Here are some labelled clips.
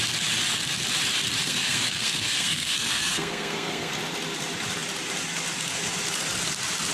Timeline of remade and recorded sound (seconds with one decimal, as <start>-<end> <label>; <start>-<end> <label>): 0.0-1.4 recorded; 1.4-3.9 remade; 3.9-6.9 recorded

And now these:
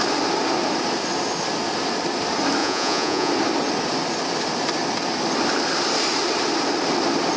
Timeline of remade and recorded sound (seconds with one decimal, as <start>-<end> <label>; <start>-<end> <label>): 0.0-2.6 recorded; 2.6-3.3 remade; 3.3-7.4 recorded

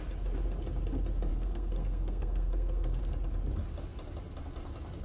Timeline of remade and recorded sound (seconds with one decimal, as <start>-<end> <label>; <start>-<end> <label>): 0.0-1.3 recorded; 1.3-3.0 remade; 3.0-5.0 recorded

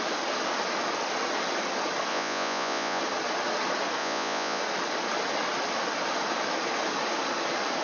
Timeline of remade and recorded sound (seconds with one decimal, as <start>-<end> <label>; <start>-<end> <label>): 0.0-2.1 recorded; 2.1-3.0 remade; 3.0-4.0 recorded; 4.0-4.6 remade; 4.6-7.8 recorded

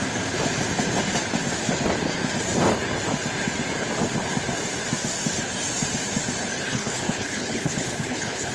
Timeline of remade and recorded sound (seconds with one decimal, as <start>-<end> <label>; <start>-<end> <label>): 0.0-6.6 recorded; 6.6-8.5 remade

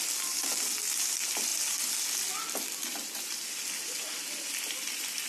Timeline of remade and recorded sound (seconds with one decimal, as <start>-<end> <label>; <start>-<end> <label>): 0.0-5.3 recorded

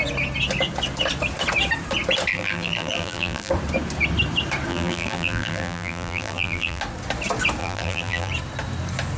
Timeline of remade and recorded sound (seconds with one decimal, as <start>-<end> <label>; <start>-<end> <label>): 0.0-2.3 recorded; 2.3-3.5 remade; 3.5-4.7 recorded; 4.7-6.8 remade; 6.8-7.6 recorded; 7.6-8.3 remade; 8.3-9.2 recorded